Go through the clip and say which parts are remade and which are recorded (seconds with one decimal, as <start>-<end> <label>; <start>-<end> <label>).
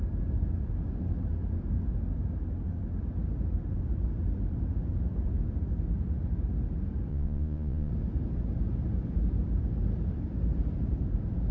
0.0-7.1 recorded; 7.1-7.9 remade; 7.9-11.5 recorded